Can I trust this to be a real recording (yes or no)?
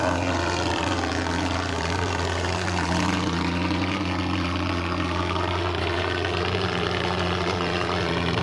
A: no